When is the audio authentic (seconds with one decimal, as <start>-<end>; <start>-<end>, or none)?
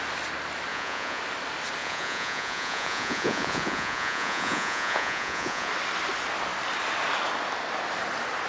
0.0-0.7; 1.2-1.8; 5.7-8.5